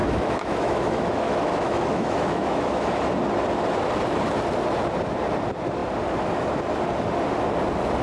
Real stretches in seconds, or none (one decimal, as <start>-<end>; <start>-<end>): 2.9-8.0